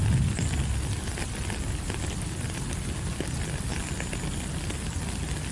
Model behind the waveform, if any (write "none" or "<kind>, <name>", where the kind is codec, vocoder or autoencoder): none